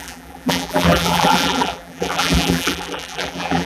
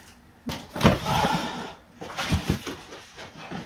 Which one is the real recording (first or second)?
second